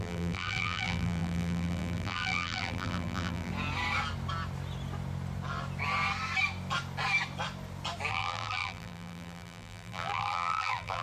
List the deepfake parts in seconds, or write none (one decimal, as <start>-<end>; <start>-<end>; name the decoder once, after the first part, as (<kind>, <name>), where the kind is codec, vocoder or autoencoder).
0.0-3.5 (vocoder, BigVGAN v2); 8.1-11.0